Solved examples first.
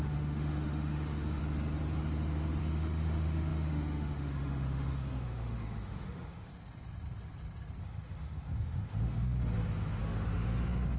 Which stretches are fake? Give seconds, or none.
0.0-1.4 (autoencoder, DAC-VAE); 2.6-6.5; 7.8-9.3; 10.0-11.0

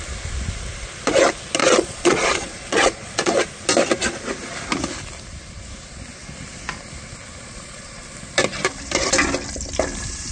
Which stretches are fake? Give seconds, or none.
1.6-3.4 (vocoder, Vocos); 7.4-8.0

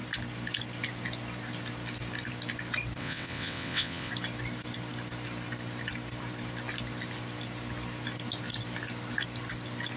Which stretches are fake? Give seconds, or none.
3.0-4.1 (vocoder, WaveNeXt)

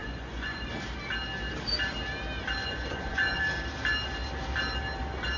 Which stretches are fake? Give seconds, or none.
0.0-0.7 (vocoder, Vocos); 2.6-3.4